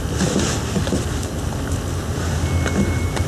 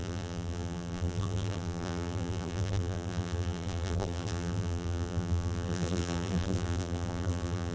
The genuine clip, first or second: first